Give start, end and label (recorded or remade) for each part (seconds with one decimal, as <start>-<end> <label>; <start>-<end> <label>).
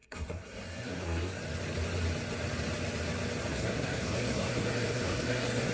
0.0-1.4 remade; 1.4-3.5 recorded; 3.5-5.7 remade